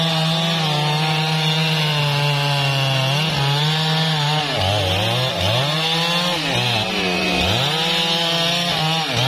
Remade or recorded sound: recorded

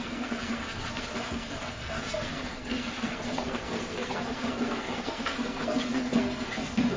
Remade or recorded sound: remade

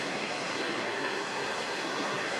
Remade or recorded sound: remade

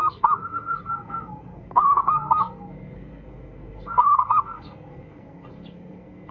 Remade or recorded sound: remade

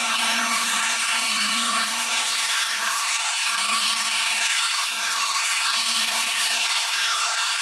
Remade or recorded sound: remade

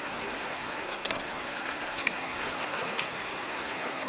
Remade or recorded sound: remade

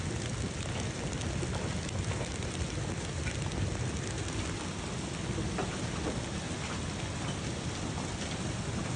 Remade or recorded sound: recorded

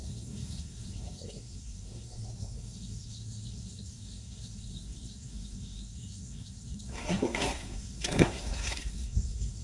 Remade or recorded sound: remade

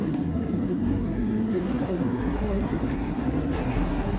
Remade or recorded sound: remade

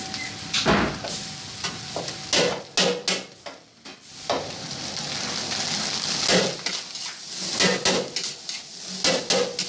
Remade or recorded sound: recorded